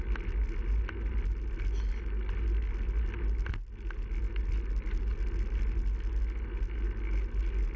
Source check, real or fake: real